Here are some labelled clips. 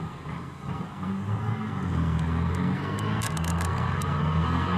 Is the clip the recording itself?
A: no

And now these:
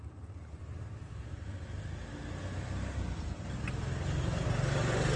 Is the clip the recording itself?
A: yes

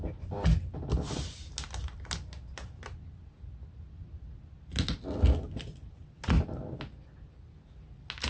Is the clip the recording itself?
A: yes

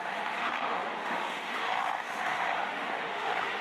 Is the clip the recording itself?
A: no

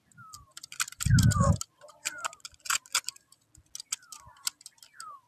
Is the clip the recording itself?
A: yes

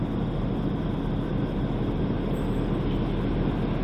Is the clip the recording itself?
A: yes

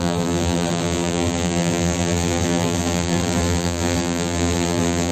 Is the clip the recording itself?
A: no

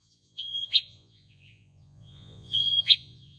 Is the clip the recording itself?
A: no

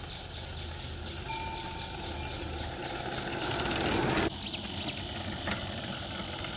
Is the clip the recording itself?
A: yes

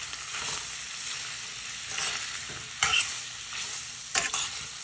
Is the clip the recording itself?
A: yes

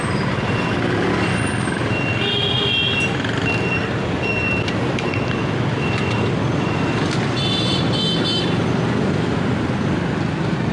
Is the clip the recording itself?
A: yes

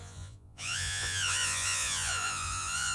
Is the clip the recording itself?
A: no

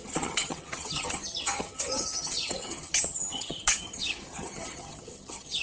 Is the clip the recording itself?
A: no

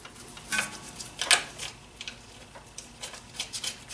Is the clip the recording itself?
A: yes